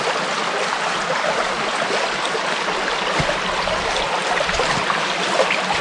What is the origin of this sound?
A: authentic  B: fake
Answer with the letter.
A